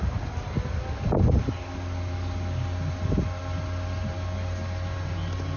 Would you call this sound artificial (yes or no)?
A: no